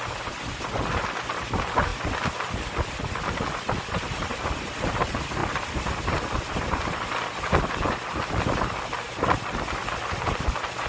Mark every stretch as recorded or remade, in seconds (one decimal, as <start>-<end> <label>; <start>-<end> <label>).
0.0-10.9 recorded